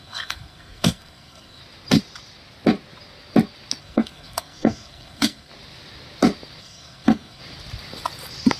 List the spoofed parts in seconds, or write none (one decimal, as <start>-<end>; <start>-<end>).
0.0-1.6; 3.8-5.5; 6.6-7.4